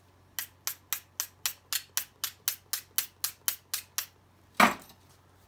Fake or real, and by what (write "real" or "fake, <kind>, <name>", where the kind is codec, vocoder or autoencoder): real